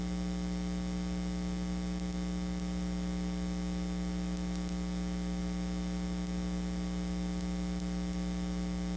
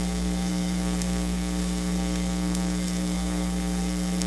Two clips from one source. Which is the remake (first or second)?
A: second